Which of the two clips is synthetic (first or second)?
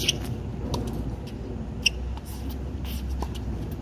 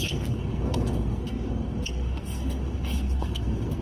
second